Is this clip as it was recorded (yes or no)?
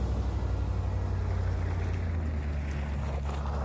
yes